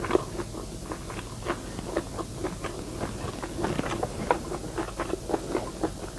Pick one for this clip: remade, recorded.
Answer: recorded